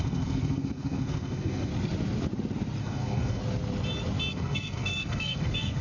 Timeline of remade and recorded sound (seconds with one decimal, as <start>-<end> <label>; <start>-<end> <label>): 0.0-1.7 remade; 1.7-2.8 recorded; 2.8-3.4 remade; 3.4-4.3 recorded; 4.3-5.8 remade

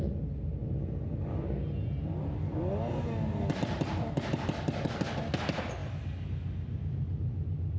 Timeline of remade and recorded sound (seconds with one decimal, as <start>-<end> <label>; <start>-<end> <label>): 0.0-7.8 recorded